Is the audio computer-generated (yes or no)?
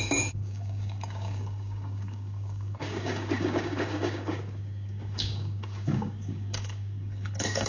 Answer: yes